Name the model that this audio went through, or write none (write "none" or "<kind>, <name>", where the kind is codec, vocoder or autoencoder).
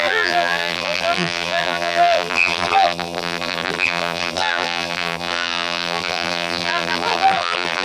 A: vocoder, BigVGAN v2